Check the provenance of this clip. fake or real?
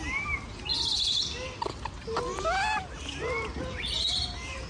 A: real